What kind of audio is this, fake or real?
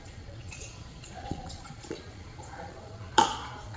fake